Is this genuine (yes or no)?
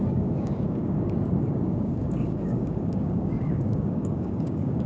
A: no